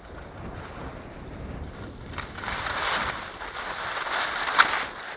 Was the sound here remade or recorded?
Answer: recorded